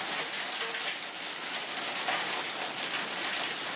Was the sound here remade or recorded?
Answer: recorded